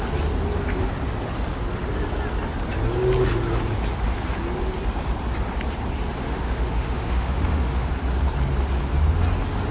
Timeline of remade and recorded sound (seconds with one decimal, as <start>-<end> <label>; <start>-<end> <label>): 0.0-6.2 recorded; 6.2-7.9 remade; 7.9-9.7 recorded